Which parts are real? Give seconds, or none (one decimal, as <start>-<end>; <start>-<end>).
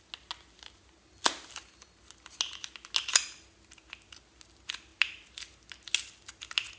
0.0-6.8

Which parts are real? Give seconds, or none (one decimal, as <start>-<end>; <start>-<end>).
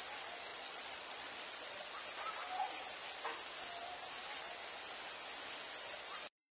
0.0-0.5; 1.9-6.5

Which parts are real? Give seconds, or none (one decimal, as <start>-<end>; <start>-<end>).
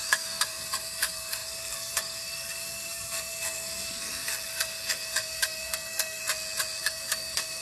6.2-6.8